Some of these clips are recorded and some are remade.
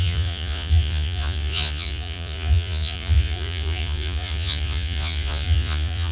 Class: remade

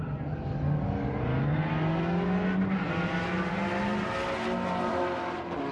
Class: recorded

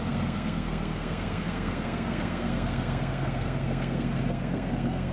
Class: remade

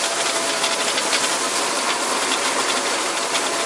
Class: recorded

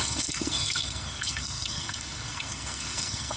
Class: remade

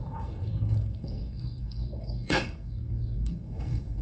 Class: remade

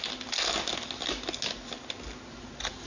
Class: recorded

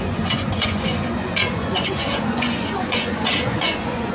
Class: remade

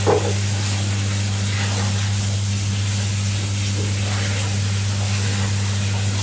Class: recorded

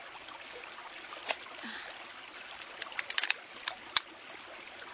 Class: recorded